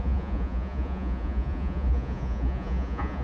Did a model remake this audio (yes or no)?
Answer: yes